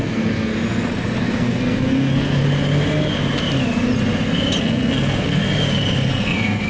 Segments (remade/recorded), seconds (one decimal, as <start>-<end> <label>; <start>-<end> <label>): 0.0-0.5 remade; 0.5-1.2 recorded; 1.2-2.4 remade; 2.4-4.6 recorded; 4.6-5.4 remade; 5.4-6.1 recorded; 6.1-6.7 remade